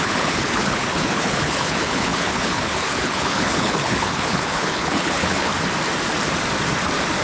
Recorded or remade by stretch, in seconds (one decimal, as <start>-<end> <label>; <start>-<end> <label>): 0.0-5.5 remade; 5.5-7.2 recorded